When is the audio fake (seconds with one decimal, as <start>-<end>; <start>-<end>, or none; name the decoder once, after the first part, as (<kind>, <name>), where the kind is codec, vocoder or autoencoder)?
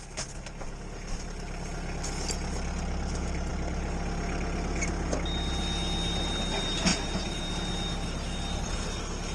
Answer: 6.9-7.5 (vocoder, Vocos)